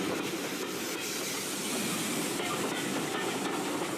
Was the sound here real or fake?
fake